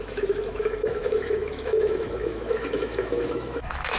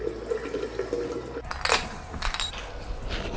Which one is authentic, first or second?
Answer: second